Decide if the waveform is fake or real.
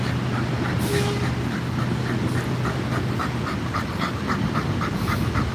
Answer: real